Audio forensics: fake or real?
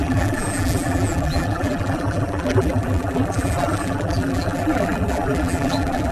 fake